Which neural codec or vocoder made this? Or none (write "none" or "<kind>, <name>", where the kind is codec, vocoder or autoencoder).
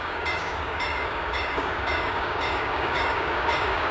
codec, DAC